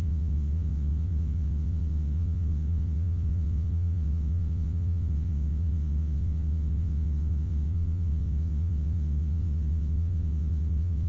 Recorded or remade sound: remade